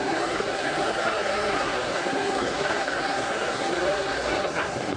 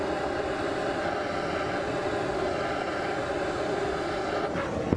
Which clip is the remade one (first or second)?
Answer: first